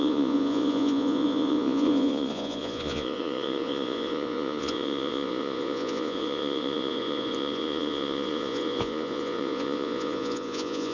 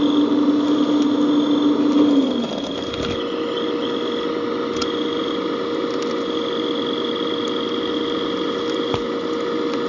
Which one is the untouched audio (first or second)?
second